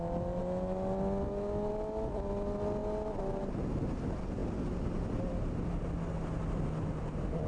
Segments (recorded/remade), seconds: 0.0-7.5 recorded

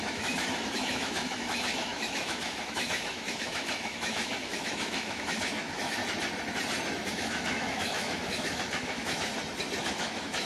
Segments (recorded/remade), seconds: 0.0-6.0 remade; 6.0-7.1 recorded; 7.1-9.3 remade; 9.3-9.8 recorded; 9.8-10.4 remade

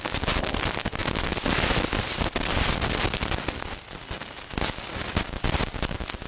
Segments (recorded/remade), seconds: 0.0-6.3 recorded

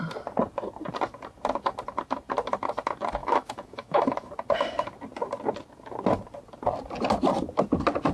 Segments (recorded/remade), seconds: 0.0-3.2 recorded; 3.2-4.3 remade; 4.3-8.1 recorded

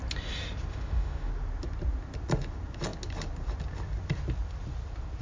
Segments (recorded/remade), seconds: 0.0-0.7 recorded; 0.7-1.3 remade; 1.3-5.2 recorded

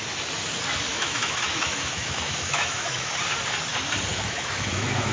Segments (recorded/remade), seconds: 0.0-0.9 recorded; 0.9-3.1 remade; 3.1-4.1 recorded; 4.1-5.1 remade

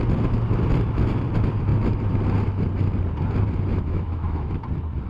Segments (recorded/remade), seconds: 0.0-3.7 recorded; 3.7-4.6 remade; 4.6-5.1 recorded